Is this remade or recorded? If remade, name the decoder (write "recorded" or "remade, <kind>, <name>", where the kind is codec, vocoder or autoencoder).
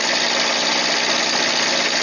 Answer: recorded